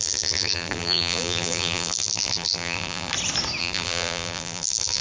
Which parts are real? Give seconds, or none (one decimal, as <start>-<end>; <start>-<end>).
3.1-3.6